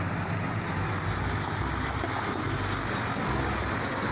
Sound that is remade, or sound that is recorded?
recorded